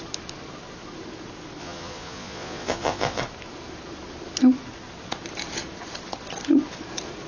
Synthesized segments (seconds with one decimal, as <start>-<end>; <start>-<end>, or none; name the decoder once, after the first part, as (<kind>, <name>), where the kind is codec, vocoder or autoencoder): 1.6-3.2 (vocoder, Vocos)